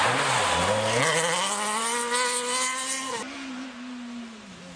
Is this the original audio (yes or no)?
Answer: yes